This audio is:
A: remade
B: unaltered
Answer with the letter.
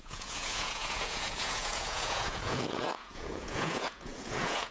A